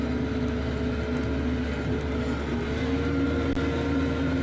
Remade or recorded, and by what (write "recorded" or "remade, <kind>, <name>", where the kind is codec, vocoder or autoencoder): recorded